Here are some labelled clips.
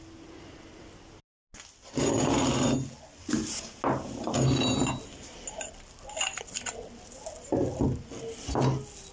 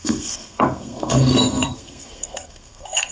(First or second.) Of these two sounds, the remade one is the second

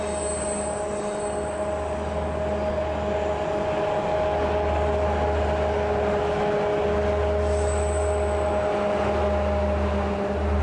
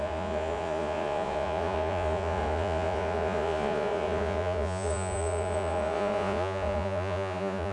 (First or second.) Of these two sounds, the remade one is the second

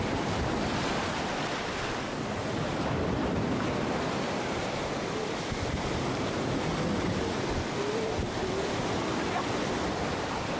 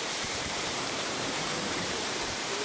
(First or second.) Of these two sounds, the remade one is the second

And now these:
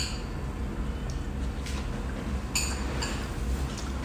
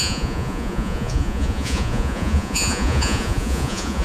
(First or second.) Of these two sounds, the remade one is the second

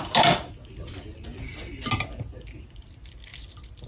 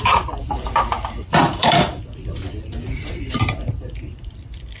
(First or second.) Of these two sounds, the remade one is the second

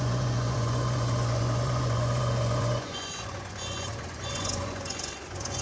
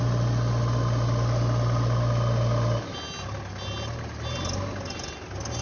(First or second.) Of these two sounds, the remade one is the first